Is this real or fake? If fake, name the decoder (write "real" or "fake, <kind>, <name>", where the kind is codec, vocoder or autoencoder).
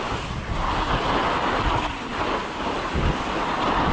real